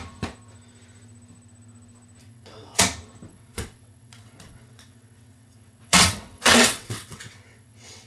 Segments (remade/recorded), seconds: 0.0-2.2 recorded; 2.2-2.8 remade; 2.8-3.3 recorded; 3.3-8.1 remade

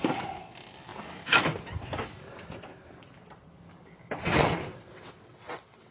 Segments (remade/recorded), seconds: 0.0-4.2 recorded; 4.2-5.9 remade

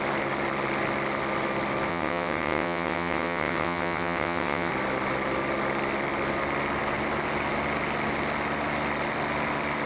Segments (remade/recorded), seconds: 0.0-1.9 recorded; 1.9-4.7 remade; 4.7-9.9 recorded

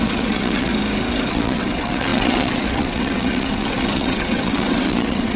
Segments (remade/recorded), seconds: 0.0-0.7 remade; 0.7-1.3 recorded; 1.3-5.4 remade

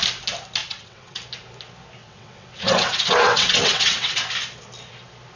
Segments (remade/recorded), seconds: 0.0-0.6 recorded; 0.6-1.2 remade; 1.2-2.0 recorded; 2.0-4.2 remade; 4.2-5.4 recorded

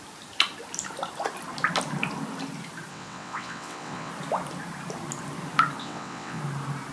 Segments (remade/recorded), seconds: 0.0-2.9 recorded; 2.9-4.1 remade; 4.1-5.8 recorded; 5.8-6.4 remade; 6.4-6.9 recorded

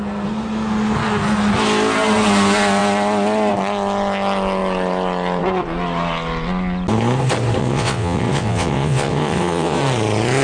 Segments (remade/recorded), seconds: 0.0-7.6 recorded; 7.6-9.8 remade; 9.8-10.4 recorded